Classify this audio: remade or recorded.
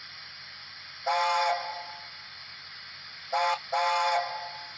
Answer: recorded